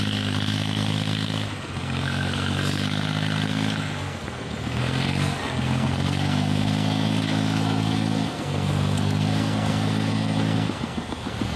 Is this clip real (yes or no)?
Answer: no